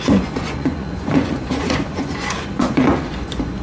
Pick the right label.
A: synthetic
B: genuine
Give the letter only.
A